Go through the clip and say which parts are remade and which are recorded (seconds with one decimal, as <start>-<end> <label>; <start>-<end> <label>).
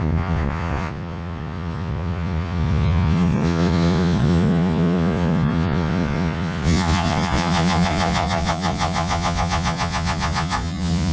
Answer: 0.0-11.1 remade